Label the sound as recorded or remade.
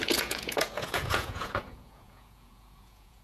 remade